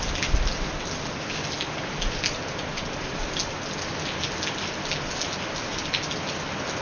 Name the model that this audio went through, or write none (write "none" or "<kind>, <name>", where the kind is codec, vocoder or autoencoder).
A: none